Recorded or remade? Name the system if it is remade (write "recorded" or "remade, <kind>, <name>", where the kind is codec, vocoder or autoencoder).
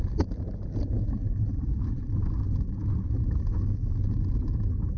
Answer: recorded